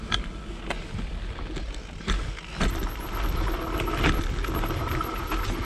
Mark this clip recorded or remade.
recorded